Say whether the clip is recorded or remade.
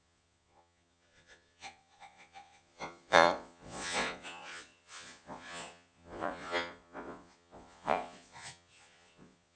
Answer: remade